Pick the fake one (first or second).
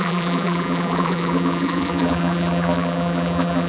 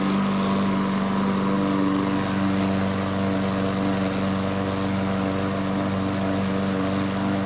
first